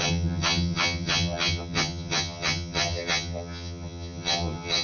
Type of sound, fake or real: fake